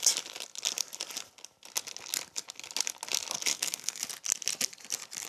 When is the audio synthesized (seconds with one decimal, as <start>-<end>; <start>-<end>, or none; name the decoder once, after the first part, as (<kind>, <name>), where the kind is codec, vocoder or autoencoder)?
3.5-4.0 (codec, SNAC)